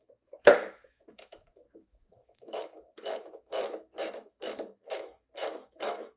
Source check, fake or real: fake